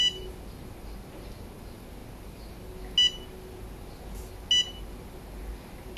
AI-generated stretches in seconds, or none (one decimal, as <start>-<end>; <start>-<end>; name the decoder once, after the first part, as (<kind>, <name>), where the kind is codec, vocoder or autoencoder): none